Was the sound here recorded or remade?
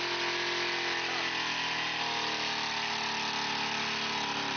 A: recorded